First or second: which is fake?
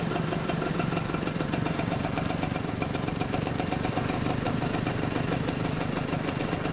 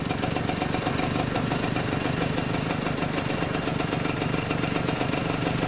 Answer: first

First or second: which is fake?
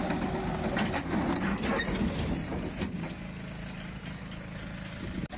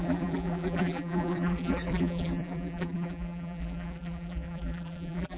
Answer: second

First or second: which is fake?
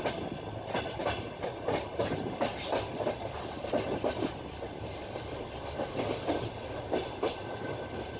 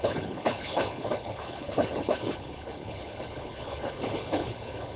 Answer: second